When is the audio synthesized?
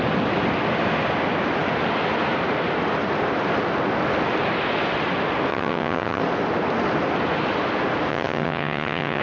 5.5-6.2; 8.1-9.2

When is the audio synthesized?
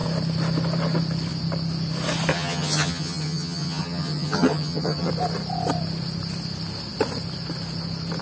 2.3-5.1